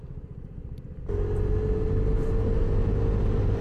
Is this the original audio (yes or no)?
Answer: yes